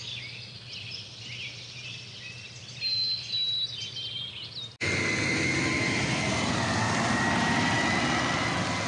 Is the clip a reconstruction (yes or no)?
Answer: no